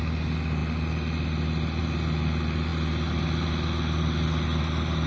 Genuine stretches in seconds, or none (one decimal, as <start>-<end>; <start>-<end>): 0.0-5.1